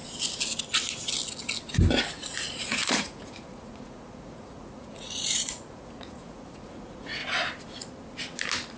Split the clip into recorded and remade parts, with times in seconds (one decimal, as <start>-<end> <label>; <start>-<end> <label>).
0.0-2.1 recorded; 2.1-7.2 remade; 7.2-8.8 recorded